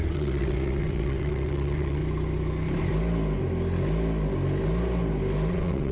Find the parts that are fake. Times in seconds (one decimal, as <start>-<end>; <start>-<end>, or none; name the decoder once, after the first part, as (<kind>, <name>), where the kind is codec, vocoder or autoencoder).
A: 0.0-2.0 (vocoder, WaveNeXt); 5.5-5.9